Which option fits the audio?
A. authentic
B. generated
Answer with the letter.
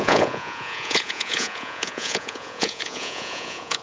B